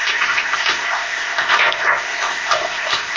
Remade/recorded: remade